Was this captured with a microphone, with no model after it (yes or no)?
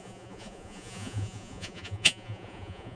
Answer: no